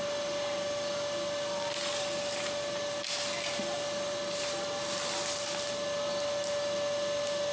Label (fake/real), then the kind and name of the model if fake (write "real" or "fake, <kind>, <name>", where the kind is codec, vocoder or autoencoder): real